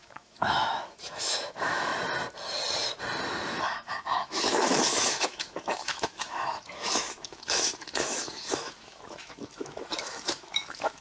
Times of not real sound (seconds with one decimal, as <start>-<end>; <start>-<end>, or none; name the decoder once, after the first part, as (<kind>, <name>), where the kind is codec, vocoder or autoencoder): 0.0-1.9 (autoencoder, DAC-VAE); 3.6-11.0